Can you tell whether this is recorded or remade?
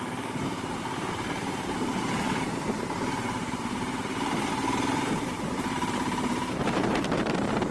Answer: remade